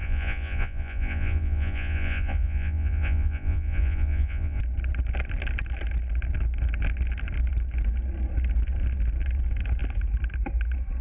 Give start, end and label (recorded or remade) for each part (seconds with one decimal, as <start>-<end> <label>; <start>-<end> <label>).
0.0-4.6 remade; 4.6-11.0 recorded